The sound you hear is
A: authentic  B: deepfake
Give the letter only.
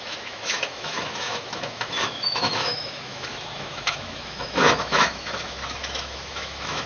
B